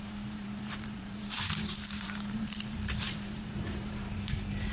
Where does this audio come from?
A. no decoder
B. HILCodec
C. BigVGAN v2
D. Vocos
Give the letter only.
C